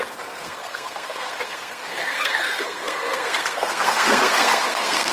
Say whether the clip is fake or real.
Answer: fake